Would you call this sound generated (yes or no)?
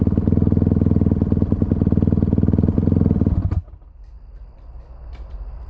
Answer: no